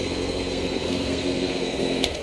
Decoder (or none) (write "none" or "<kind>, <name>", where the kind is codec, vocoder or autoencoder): codec, SNAC